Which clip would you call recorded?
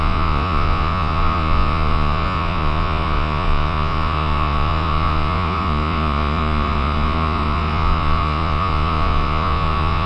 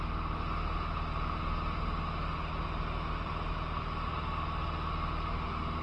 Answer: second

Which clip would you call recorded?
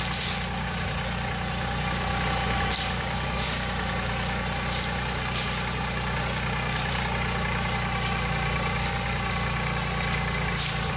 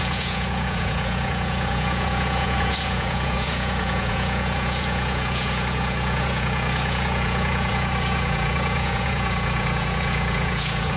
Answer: first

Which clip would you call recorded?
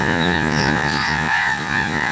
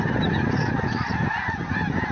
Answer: second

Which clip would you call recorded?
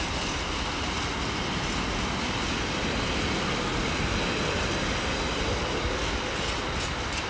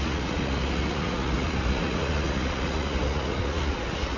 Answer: first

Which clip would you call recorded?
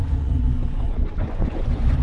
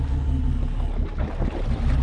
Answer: second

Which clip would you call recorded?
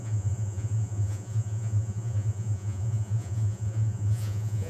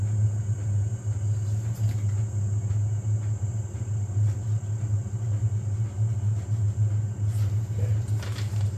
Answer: second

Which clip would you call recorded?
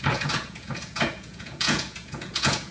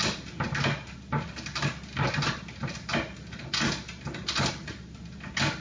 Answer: second